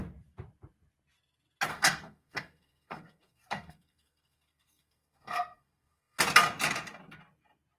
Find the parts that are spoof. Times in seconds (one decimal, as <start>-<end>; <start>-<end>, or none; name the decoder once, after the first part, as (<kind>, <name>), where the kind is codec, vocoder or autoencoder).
1.7-6.2 (codec, SNAC)